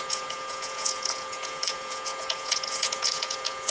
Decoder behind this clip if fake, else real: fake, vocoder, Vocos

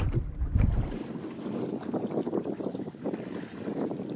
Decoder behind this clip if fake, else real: real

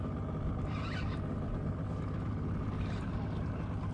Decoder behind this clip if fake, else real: real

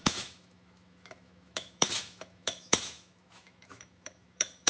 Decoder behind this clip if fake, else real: fake, autoencoder, DAC-VAE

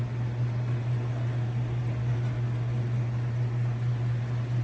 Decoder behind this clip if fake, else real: real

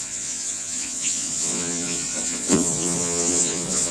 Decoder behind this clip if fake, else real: fake, vocoder, Vocos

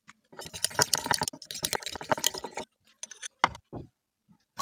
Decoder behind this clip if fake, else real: real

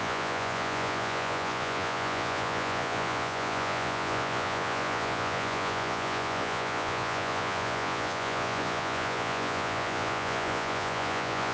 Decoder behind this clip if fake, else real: fake, vocoder, Vocos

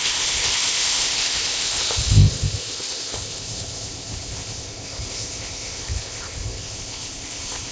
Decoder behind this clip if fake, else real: fake, codec, ZipCodec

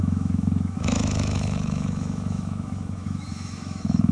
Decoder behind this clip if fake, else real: fake, autoencoder, DAC-VAE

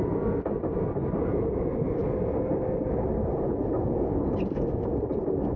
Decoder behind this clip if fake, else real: real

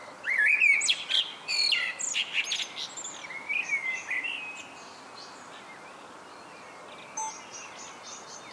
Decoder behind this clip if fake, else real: real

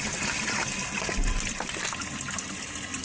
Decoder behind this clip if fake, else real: real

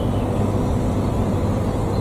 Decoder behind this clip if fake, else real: real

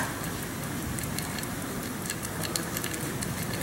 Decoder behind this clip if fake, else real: real